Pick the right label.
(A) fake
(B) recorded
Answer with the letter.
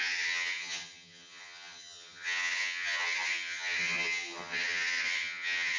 A